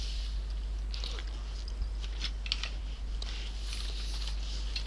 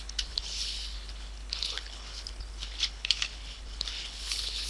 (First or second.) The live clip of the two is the first